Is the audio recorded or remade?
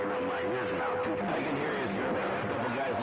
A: recorded